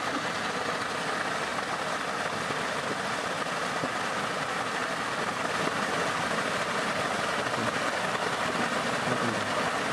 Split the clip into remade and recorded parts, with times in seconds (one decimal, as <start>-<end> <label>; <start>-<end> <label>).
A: 0.0-9.9 recorded